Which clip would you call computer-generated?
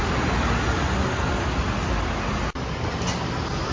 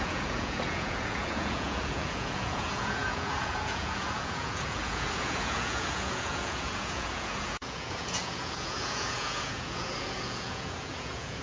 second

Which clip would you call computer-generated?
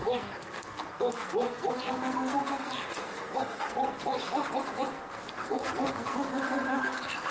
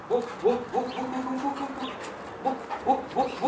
first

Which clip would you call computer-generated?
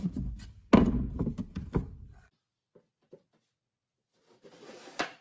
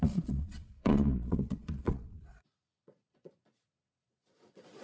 second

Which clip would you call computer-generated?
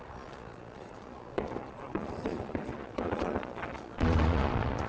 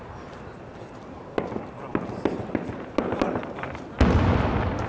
first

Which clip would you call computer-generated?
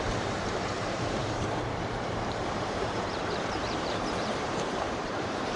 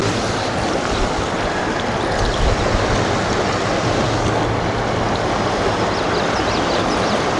first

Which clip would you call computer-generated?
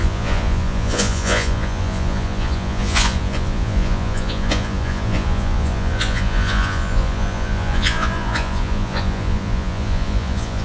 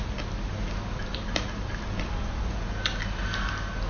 first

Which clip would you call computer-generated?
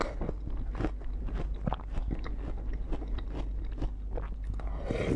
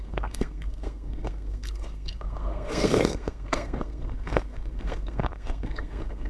second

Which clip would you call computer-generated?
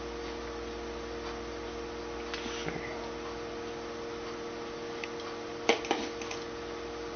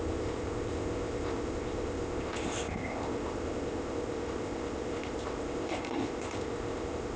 second